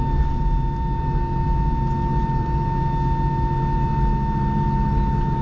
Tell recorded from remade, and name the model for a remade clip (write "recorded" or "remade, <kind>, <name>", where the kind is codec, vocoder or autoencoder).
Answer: recorded